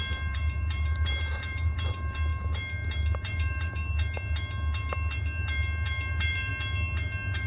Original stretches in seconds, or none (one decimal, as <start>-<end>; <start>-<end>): 2.3-3.2; 3.8-6.1; 6.5-7.5